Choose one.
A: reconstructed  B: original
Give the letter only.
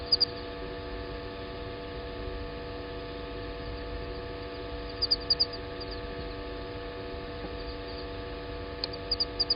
B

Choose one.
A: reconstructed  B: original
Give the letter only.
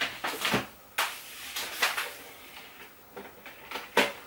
B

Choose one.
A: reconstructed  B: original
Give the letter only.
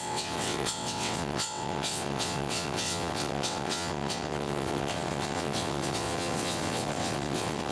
A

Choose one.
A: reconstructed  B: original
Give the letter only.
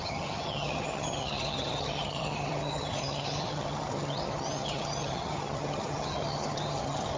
A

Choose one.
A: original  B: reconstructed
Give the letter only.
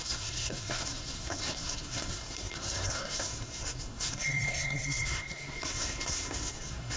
B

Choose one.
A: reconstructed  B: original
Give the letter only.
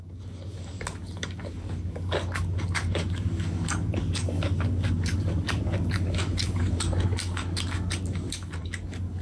A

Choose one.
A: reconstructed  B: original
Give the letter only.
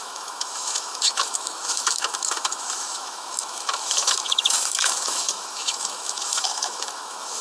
A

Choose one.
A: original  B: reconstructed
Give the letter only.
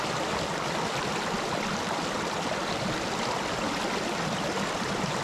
A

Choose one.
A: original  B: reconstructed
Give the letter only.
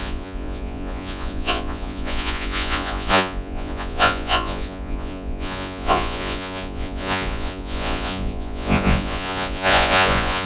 B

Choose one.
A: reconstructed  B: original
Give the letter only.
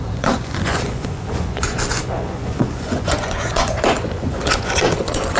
A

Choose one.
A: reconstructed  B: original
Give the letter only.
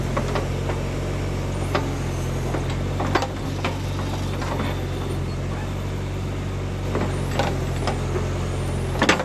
B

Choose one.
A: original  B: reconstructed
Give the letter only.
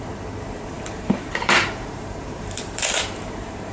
B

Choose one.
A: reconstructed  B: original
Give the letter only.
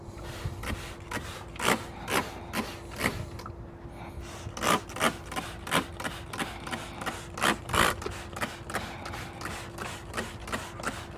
B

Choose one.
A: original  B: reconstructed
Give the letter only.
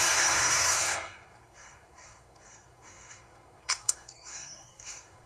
B